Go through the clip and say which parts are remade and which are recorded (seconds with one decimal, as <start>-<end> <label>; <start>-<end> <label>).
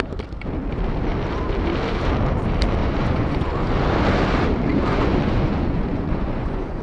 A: 0.0-2.8 recorded; 2.8-3.7 remade; 3.7-4.7 recorded; 4.7-6.8 remade